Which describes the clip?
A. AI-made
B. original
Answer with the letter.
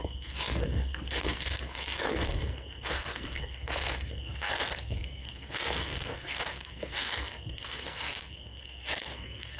A